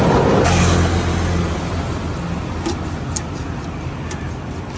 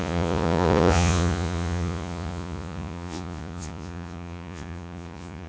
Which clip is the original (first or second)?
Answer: first